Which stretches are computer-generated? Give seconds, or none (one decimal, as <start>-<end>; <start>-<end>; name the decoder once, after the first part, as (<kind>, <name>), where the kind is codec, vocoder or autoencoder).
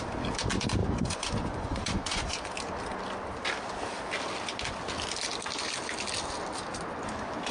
0.8-2.5 (vocoder, Vocos)